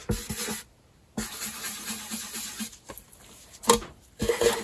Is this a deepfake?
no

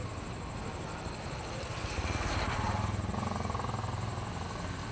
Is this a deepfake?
no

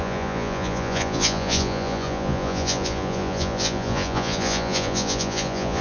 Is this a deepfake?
yes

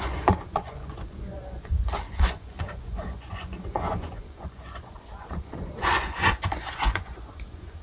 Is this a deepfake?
yes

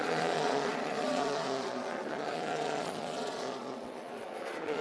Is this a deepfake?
yes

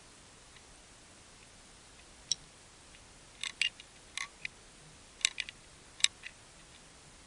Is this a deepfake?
no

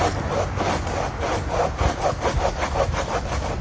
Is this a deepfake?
no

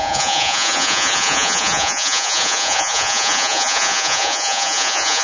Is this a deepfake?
yes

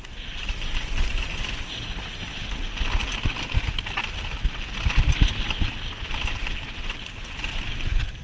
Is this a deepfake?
no